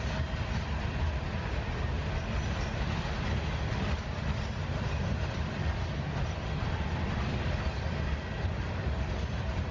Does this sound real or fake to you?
real